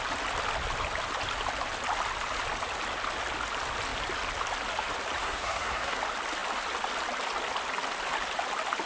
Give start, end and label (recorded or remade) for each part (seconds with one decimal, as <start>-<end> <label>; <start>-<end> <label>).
0.0-5.2 recorded; 5.2-6.0 remade; 6.0-8.9 recorded